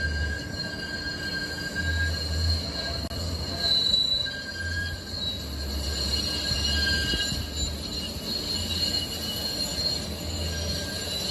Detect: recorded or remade recorded